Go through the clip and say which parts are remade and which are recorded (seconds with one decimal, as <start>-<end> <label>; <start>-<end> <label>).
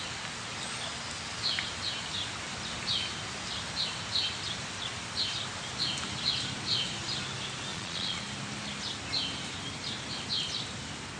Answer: 0.0-7.7 recorded; 7.7-8.2 remade; 8.2-11.2 recorded